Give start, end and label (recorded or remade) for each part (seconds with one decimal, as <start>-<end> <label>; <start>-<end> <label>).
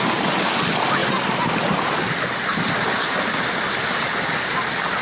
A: 0.0-5.0 recorded